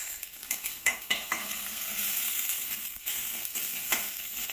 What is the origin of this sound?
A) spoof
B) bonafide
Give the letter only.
A